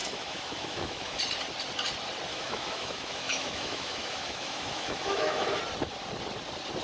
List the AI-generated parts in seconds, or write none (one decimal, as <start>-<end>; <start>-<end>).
0.0-1.2; 2.3-5.6